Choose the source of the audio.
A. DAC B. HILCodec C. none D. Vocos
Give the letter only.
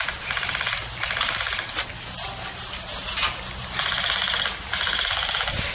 C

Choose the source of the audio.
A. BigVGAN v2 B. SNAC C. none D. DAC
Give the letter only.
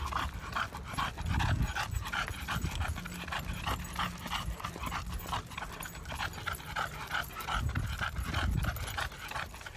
C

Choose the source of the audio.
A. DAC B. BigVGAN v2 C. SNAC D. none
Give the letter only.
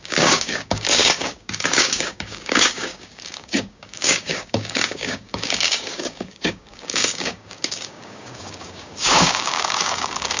A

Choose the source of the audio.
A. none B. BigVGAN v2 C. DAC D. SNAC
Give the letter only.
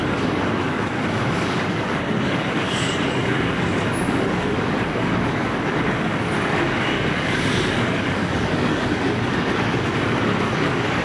C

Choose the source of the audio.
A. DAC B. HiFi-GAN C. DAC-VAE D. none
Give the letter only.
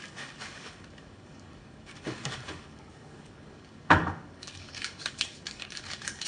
A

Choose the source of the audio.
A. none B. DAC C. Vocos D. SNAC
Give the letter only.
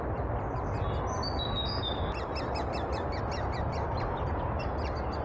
A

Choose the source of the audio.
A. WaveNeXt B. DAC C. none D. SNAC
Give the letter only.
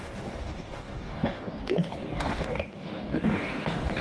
B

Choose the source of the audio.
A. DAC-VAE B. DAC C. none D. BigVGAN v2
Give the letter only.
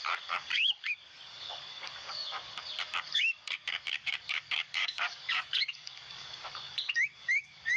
B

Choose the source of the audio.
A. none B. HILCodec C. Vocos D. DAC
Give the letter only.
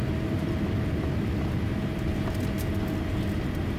A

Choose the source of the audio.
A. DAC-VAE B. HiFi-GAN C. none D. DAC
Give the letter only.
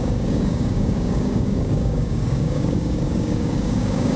D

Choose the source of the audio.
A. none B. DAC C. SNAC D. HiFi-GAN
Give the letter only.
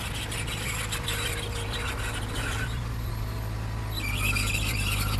A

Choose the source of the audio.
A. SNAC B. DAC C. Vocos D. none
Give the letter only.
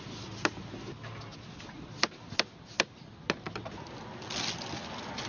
D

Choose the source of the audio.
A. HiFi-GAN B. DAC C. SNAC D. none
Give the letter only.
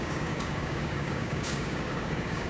B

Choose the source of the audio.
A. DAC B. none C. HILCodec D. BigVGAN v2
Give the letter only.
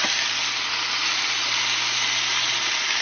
B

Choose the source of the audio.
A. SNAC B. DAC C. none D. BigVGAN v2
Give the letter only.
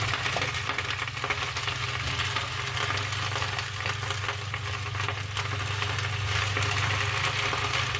C